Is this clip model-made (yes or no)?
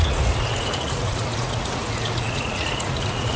yes